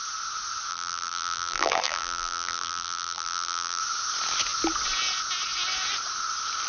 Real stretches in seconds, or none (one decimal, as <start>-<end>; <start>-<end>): 0.0-0.7; 3.8-6.7

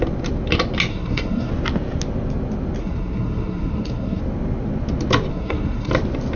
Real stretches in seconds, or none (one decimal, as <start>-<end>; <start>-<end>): 0.0-0.9; 1.5-2.8; 4.2-5.3; 5.9-6.4

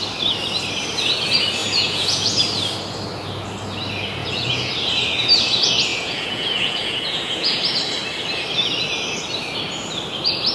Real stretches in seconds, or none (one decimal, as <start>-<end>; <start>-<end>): 0.0-1.6; 2.4-4.2; 4.7-5.9; 7.6-10.5

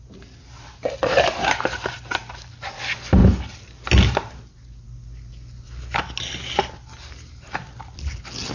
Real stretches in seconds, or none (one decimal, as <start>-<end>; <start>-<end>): 0.0-8.5

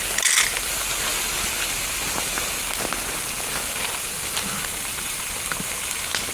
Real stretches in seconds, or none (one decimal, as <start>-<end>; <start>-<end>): 0.0-6.3

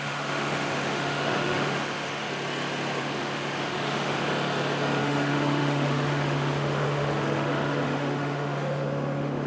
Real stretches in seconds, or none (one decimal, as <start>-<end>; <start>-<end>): 2.3-3.0; 4.3-5.0

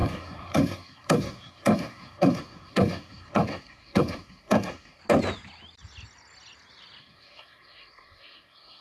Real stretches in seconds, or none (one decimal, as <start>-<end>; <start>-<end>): 5.0-7.0